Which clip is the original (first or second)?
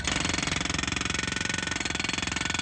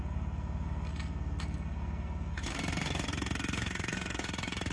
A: first